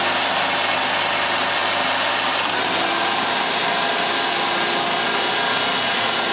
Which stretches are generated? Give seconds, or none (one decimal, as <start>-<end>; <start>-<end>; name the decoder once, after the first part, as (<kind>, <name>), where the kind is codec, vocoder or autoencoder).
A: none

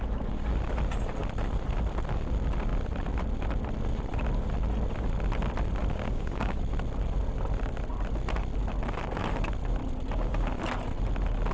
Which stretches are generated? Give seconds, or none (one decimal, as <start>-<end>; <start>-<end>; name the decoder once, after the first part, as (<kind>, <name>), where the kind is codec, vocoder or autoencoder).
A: 6.0-6.6 (codec, DAC)

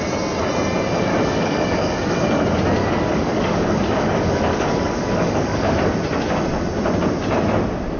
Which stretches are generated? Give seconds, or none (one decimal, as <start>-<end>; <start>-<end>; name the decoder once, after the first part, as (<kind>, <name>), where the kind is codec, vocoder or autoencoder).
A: 1.1-2.1 (codec, DAC); 2.8-5.7